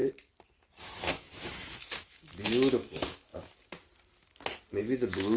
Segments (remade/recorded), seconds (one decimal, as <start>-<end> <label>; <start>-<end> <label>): 0.0-0.8 recorded; 0.8-3.3 remade; 3.3-4.8 recorded; 4.8-5.4 remade